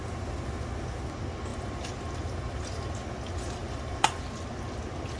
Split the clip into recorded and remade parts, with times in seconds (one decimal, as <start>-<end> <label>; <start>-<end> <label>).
0.0-1.5 recorded; 1.5-3.0 remade; 3.0-3.6 recorded; 3.6-4.2 remade; 4.2-5.2 recorded